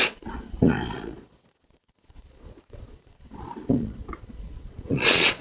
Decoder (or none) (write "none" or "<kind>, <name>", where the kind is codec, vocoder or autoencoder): vocoder, Vocos